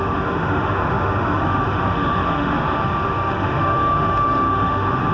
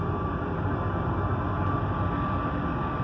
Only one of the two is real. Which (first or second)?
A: second